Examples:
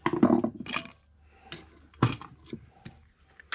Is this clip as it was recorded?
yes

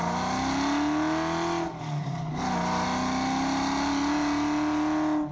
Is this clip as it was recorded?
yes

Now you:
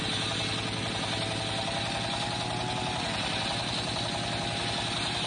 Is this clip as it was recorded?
yes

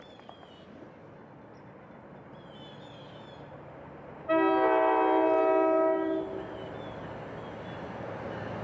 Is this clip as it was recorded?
yes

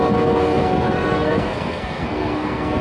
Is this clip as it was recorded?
no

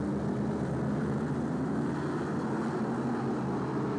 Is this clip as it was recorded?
yes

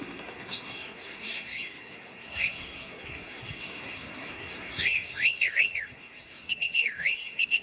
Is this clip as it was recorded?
no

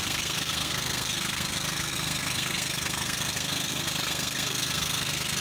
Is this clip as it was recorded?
no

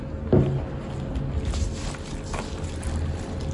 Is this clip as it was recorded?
yes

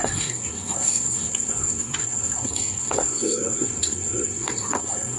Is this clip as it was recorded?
no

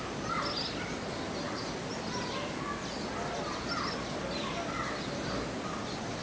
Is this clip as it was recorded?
yes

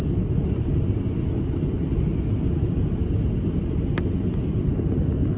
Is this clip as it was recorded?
yes